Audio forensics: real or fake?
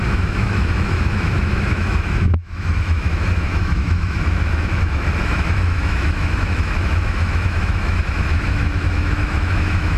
fake